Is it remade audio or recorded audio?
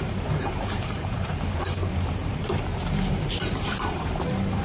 remade